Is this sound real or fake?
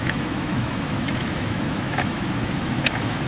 fake